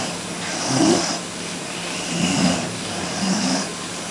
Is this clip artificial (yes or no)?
yes